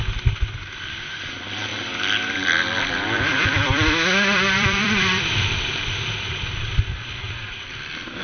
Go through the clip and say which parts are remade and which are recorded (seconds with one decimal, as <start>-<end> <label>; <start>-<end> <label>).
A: 0.0-1.7 recorded; 1.7-6.3 remade; 6.3-8.2 recorded